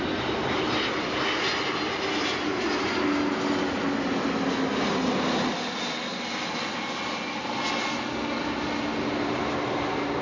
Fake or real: real